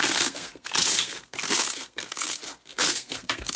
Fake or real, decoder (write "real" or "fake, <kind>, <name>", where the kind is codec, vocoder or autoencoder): fake, codec, SNAC